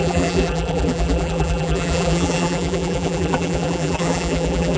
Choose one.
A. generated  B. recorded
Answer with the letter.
A